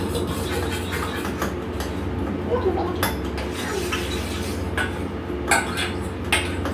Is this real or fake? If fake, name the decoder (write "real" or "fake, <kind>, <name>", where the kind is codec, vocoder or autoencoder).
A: real